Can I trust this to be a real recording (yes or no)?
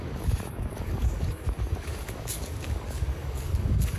no